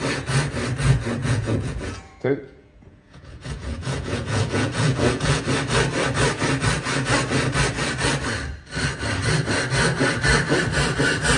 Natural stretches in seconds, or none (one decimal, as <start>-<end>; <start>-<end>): 0.0-1.2; 5.4-11.4

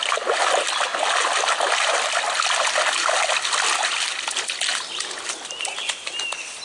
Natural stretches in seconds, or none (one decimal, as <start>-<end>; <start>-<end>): 0.0-6.6